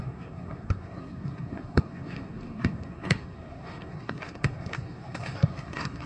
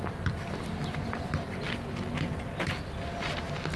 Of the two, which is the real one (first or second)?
second